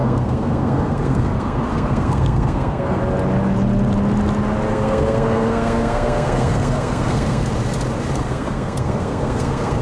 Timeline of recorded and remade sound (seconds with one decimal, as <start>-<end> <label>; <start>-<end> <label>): 0.0-3.0 remade; 3.0-4.7 recorded; 4.7-7.5 remade; 7.5-8.1 recorded; 8.1-9.8 remade